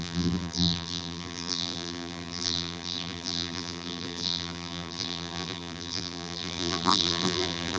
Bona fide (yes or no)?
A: no